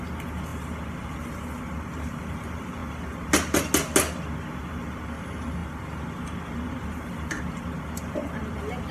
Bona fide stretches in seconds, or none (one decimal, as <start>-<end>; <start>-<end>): 0.0-8.9